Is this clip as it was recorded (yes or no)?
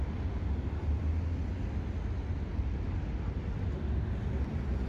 yes